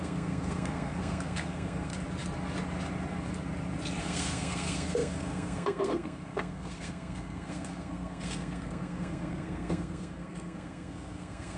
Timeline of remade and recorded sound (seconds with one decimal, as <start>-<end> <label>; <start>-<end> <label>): 0.0-1.9 remade; 1.9-4.0 recorded; 4.0-11.6 remade